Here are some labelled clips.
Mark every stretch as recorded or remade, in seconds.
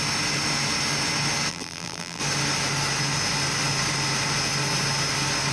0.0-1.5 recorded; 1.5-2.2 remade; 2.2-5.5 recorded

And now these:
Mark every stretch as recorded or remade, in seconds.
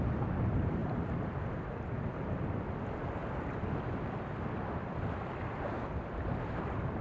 0.0-7.0 recorded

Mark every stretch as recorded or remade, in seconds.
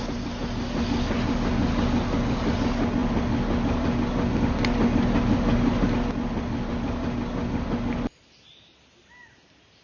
0.0-9.8 recorded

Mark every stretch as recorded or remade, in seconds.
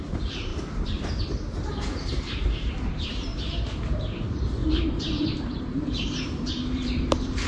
0.0-3.3 remade; 3.3-4.0 recorded; 4.0-7.5 remade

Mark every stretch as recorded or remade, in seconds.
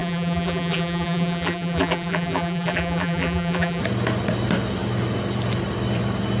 0.0-3.8 remade; 3.8-6.4 recorded